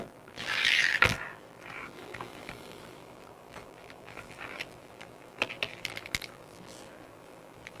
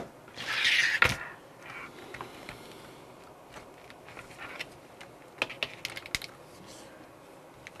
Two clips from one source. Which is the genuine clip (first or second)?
second